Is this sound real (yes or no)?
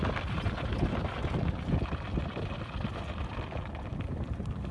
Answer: yes